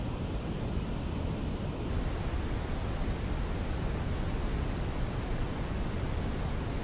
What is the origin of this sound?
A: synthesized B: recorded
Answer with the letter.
B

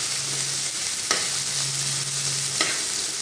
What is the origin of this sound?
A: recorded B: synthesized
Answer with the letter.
A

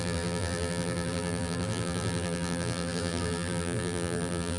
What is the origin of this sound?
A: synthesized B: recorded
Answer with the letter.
A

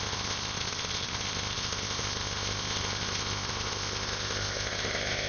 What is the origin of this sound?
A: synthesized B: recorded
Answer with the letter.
A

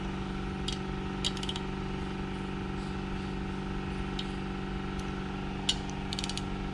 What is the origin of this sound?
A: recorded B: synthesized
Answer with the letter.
A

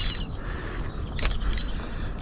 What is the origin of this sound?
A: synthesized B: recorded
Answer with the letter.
B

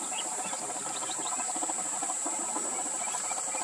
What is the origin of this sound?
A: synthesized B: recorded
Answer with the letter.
A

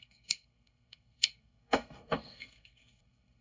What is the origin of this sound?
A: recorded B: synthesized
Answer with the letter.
B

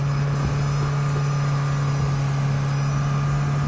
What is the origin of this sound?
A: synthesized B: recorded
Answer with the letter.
B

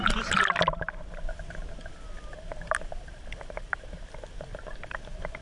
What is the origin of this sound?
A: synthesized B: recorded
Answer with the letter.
B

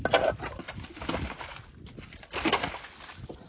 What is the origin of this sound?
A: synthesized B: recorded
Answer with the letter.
B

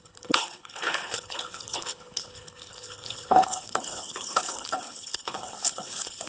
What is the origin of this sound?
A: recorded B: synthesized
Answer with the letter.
B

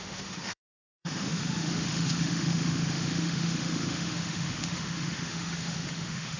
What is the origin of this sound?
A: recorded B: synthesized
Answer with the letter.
B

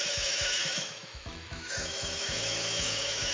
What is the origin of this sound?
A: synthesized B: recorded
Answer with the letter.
A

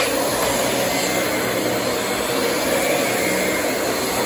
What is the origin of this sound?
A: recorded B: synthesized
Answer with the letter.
A